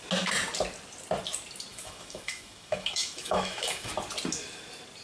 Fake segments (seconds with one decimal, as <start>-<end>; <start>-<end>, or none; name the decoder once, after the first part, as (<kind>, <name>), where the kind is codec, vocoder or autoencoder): 1.7-3.9 (autoencoder, DAC-VAE)